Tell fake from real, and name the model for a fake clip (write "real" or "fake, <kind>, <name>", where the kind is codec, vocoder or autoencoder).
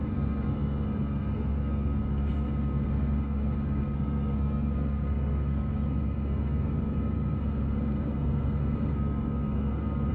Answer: fake, codec, SNAC